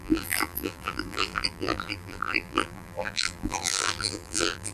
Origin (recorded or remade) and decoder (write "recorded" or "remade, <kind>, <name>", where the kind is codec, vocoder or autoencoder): remade, vocoder, BigVGAN v2